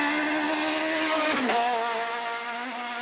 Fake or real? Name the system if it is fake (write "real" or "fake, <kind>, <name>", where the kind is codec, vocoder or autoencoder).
real